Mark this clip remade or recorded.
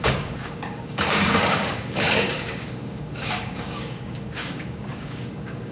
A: remade